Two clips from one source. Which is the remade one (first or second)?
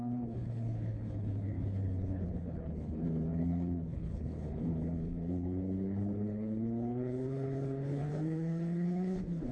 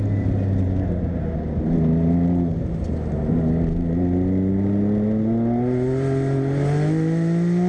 first